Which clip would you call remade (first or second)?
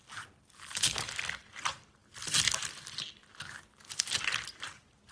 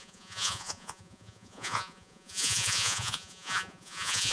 second